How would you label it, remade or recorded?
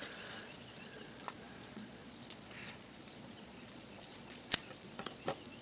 remade